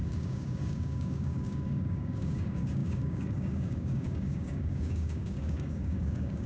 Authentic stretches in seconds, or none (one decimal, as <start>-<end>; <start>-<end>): none